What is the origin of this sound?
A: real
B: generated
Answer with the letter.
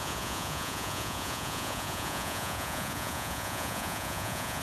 B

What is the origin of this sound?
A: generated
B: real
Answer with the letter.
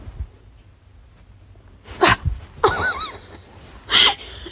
B